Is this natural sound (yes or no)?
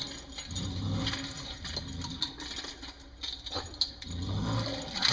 yes